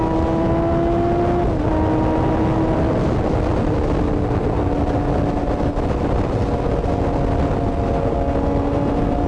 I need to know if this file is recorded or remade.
recorded